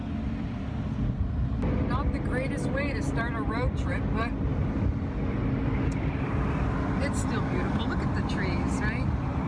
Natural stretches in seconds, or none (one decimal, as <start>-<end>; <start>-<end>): 0.0-9.5